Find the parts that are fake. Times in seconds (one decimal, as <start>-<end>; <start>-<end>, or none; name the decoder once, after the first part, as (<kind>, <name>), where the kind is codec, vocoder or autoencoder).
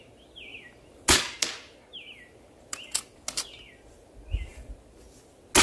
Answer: none